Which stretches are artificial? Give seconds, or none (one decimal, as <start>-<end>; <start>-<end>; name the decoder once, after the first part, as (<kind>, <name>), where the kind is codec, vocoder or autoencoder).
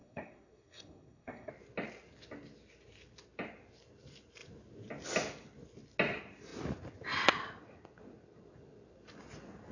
0.0-1.5 (codec, SNAC)